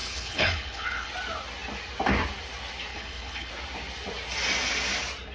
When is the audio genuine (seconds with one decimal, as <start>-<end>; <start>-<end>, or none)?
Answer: 1.1-2.9; 3.5-5.3